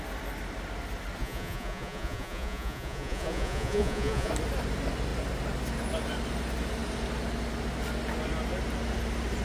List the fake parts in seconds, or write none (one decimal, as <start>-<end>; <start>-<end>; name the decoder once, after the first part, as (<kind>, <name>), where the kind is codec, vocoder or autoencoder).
1.2-4.3 (vocoder, Vocos)